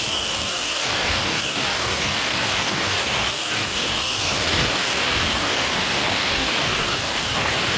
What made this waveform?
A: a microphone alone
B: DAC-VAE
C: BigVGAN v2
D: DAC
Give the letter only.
D